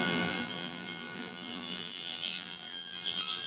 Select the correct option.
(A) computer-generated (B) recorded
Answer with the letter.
A